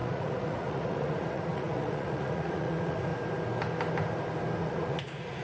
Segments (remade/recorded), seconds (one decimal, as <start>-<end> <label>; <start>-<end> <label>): 0.0-3.1 remade; 3.1-4.6 recorded; 4.6-5.4 remade